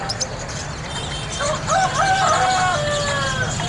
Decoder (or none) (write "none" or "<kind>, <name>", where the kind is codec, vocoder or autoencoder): none